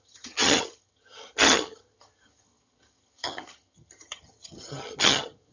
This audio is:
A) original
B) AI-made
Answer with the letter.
B